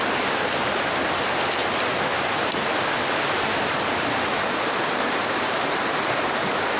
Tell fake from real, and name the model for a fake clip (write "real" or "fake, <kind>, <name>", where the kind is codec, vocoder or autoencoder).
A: real